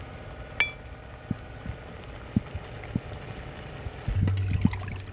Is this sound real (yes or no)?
yes